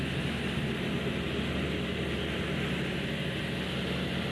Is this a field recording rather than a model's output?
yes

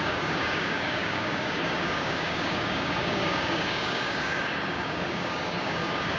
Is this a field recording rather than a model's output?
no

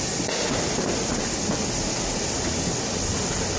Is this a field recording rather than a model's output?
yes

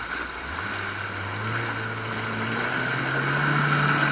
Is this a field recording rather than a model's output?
yes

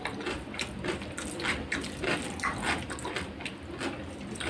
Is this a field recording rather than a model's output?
yes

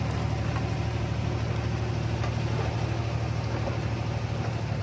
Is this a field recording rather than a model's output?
yes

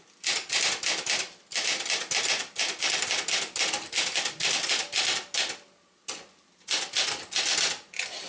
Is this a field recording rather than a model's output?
yes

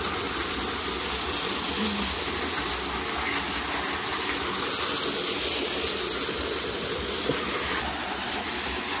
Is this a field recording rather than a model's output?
yes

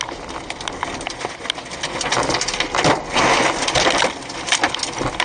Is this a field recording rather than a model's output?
yes